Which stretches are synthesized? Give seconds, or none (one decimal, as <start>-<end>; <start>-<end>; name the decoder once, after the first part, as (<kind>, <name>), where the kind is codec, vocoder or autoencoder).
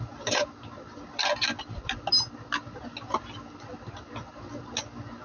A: none